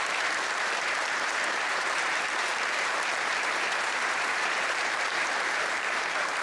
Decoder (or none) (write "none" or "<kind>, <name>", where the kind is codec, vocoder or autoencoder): vocoder, BigVGAN v2